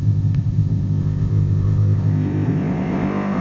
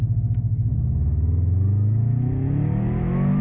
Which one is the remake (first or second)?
first